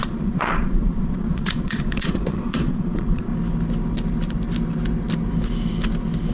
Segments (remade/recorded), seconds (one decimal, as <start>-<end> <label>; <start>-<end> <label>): 0.0-3.3 remade; 3.3-6.3 recorded